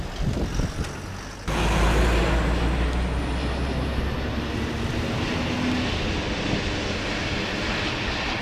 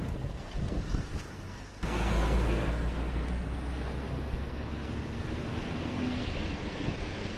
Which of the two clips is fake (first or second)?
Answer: second